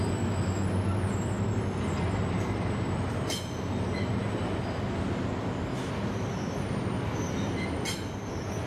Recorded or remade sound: recorded